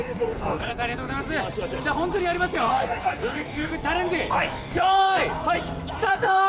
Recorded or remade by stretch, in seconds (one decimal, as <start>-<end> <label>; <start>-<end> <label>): 0.0-0.7 remade; 0.7-2.6 recorded; 2.6-3.7 remade; 3.7-4.3 recorded; 4.3-5.2 remade; 5.2-6.1 recorded; 6.1-6.5 remade